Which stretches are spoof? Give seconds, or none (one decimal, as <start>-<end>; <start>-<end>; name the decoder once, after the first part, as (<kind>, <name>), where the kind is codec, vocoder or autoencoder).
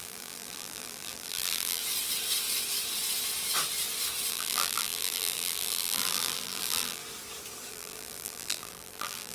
0.0-1.8 (vocoder, BigVGAN v2); 4.3-7.0; 7.7-9.3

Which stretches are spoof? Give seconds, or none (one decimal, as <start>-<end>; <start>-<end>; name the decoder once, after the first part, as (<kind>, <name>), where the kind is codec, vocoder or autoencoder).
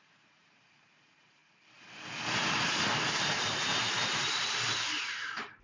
0.0-1.4 (vocoder, BigVGAN v2); 4.3-5.6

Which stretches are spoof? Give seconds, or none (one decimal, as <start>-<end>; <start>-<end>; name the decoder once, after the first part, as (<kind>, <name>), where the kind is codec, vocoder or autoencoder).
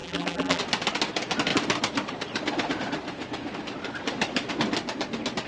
0.0-0.6 (vocoder, BigVGAN v2)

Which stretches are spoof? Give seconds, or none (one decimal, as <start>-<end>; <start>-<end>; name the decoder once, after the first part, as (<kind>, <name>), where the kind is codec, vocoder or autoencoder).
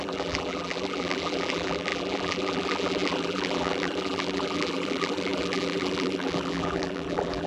0.0-7.5 (vocoder, BigVGAN v2)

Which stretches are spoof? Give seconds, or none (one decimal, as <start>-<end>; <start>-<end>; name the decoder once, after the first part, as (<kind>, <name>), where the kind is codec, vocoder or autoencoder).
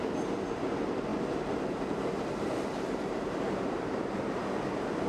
1.1-3.7 (vocoder, BigVGAN v2)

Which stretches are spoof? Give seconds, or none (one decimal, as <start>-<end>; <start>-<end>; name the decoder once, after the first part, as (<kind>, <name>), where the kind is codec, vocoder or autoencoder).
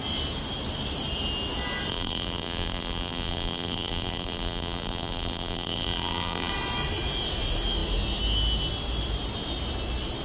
1.9-6.5 (vocoder, BigVGAN v2)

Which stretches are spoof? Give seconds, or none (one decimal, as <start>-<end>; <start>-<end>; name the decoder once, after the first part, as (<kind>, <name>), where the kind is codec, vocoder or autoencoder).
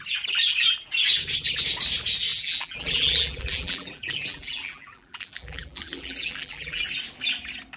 2.3-6.8 (vocoder, BigVGAN v2)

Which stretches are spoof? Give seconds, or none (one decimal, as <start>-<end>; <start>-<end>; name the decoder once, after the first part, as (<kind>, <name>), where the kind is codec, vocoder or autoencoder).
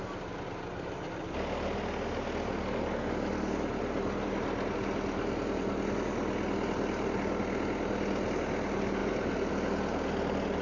9.0-9.5 (vocoder, BigVGAN v2)